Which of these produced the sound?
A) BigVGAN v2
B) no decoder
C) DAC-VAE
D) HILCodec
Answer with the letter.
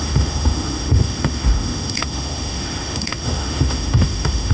C